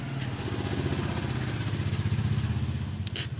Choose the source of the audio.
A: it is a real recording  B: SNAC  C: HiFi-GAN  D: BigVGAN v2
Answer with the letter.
A